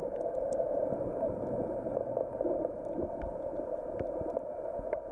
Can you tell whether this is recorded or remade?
recorded